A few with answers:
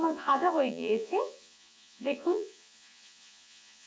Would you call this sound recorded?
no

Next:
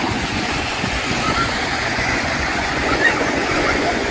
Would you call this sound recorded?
no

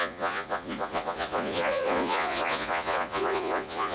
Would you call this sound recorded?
no